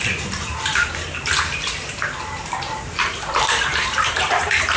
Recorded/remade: remade